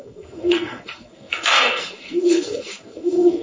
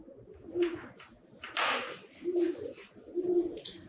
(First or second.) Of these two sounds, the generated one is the first